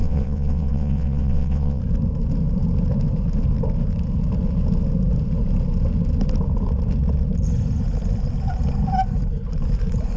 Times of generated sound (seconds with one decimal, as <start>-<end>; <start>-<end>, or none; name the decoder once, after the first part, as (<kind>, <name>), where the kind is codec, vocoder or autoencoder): 0.0-1.8 (vocoder, WaveNeXt)

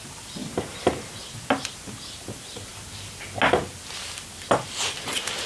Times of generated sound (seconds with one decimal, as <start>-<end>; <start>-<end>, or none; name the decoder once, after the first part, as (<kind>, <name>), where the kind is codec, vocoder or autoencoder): 0.4-1.1 (vocoder, BigVGAN v2)

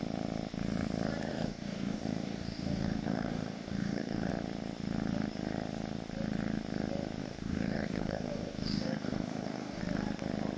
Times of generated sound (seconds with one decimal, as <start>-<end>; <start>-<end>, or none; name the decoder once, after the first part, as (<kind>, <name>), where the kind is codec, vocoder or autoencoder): 1.3-4.3 (codec, DAC); 7.2-9.8

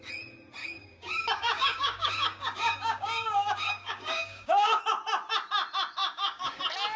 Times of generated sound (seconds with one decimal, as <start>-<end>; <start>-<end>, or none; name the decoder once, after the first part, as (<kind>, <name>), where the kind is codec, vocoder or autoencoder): 0.6-4.8 (codec, DAC); 6.0-6.6